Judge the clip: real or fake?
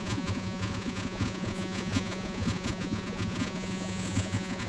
fake